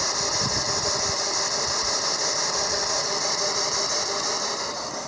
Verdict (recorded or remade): recorded